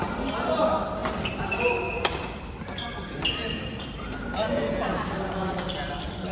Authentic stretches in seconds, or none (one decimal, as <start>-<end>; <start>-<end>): 0.0-6.3